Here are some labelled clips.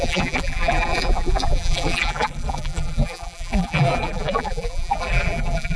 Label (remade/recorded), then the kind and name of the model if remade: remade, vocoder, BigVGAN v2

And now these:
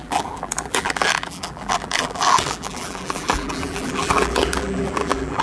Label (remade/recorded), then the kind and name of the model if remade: remade, vocoder, BigVGAN v2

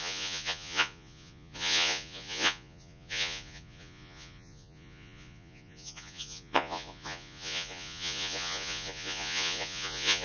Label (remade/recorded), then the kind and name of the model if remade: remade, vocoder, Vocos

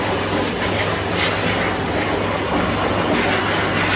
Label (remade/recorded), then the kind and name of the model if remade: recorded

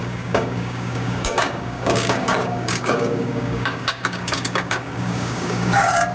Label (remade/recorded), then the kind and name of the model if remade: remade, codec, DAC